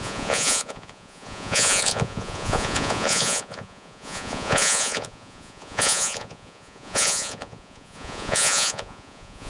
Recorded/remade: remade